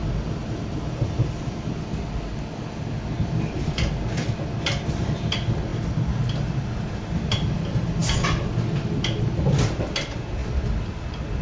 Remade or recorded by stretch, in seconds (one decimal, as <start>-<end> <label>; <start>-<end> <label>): 0.0-11.4 recorded